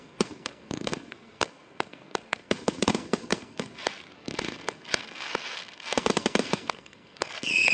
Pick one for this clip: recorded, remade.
remade